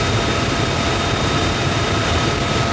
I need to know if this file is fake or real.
fake